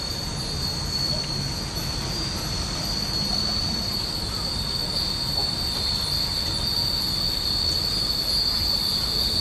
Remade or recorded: recorded